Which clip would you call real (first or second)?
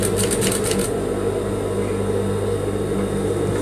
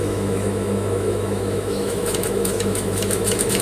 first